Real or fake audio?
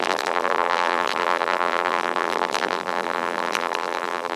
fake